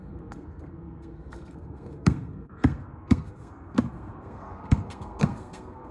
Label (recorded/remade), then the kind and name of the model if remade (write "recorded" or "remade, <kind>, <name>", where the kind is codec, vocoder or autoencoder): remade, codec, SNAC